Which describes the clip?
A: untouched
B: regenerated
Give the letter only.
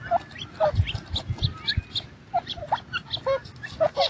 A